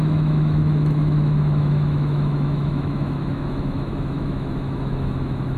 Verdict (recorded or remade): remade